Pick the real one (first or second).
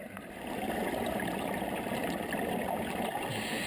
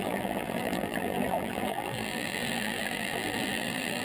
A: first